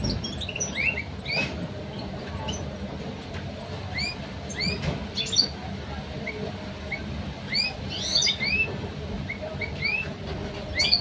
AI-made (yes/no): no